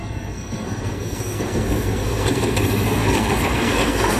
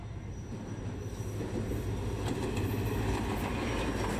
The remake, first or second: first